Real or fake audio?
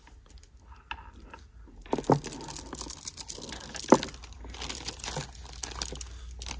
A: real